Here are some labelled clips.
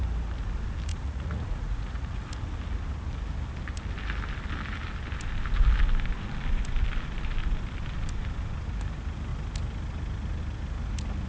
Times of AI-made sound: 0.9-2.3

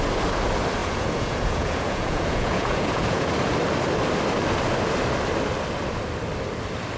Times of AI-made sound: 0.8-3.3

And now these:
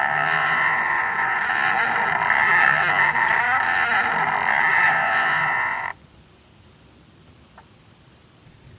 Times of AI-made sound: 0.4-1.5; 4.7-6.4

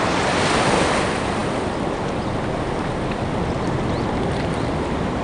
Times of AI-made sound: none

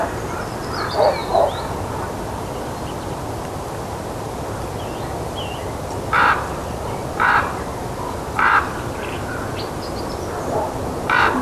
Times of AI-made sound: none